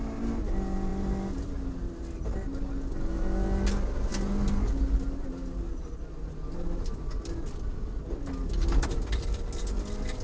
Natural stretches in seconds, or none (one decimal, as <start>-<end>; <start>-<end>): 0.0-10.2